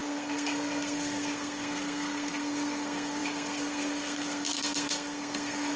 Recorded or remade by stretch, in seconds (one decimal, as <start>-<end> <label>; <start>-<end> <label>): 0.0-5.8 remade